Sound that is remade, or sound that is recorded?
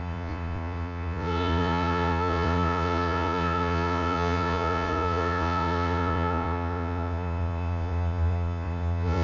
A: remade